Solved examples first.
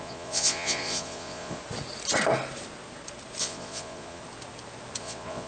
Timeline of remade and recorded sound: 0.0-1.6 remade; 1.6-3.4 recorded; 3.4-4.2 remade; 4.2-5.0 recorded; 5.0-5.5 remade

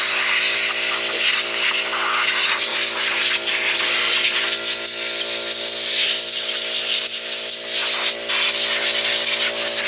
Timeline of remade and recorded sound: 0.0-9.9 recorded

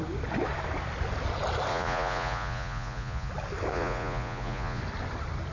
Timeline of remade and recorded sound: 0.0-1.7 recorded; 1.7-3.3 remade; 3.3-3.7 recorded; 3.7-4.8 remade; 4.8-5.5 recorded